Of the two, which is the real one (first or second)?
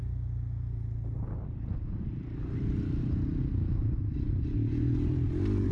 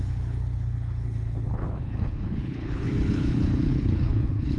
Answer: first